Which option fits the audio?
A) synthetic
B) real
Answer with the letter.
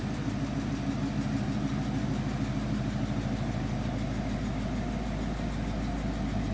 B